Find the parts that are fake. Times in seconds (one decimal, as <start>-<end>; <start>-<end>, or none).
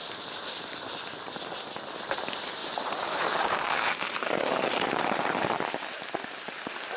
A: 2.6-6.1